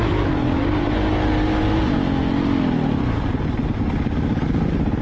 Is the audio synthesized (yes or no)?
no